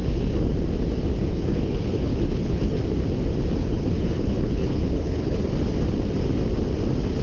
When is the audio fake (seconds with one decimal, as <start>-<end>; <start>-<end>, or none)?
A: 1.3-2.8; 3.6-5.4